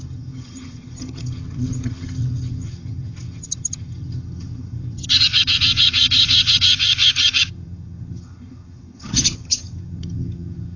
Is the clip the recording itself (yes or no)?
no